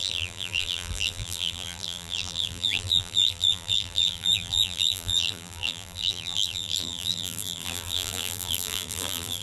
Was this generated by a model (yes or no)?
yes